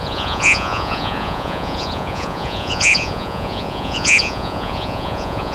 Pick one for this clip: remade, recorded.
remade